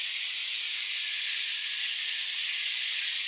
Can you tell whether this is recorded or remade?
recorded